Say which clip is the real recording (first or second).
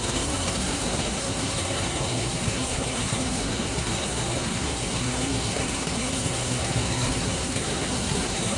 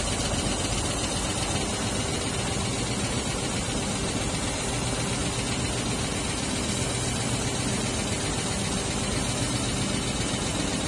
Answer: second